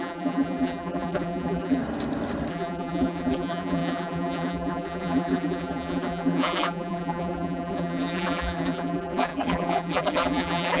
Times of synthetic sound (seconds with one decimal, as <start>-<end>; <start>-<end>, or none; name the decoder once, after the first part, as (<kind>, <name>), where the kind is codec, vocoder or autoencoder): 0.0-1.8 (vocoder, BigVGAN v2); 2.5-10.8